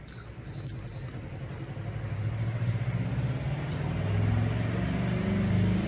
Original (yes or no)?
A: yes